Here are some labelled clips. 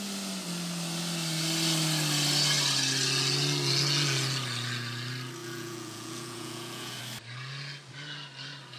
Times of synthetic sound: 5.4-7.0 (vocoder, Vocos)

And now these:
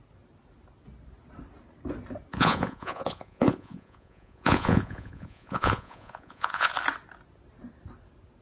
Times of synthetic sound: 2.3-6.7 (vocoder, Vocos)